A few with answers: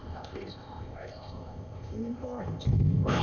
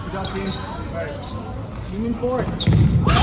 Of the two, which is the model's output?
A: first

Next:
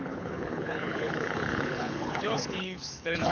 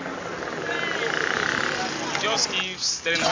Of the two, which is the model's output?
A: first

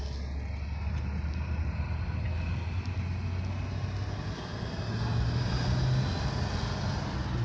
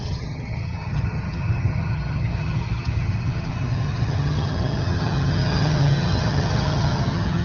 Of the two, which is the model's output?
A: second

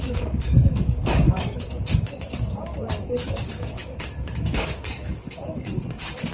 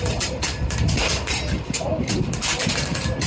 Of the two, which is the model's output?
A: first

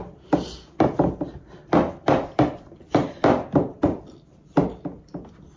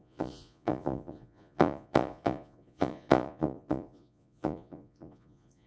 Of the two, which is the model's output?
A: second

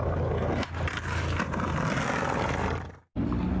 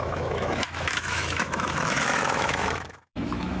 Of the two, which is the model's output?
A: second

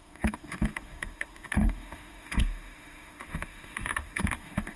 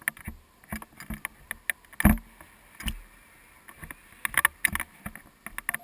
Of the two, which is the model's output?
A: first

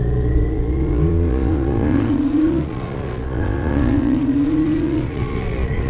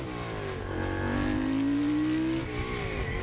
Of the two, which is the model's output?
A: first